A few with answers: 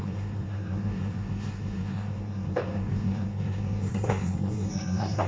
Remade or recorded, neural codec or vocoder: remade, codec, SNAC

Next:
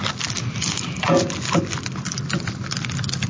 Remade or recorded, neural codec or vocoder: recorded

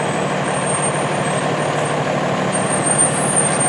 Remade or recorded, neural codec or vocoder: recorded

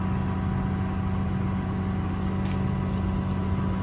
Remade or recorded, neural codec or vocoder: recorded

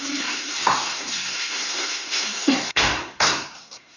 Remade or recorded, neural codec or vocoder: remade, codec, SNAC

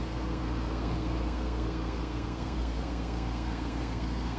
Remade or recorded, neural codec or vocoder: remade, codec, SNAC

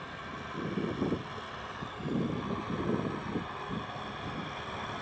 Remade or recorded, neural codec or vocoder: recorded